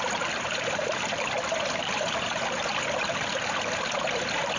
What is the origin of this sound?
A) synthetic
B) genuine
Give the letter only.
B